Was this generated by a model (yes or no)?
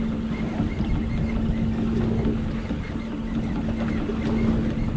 no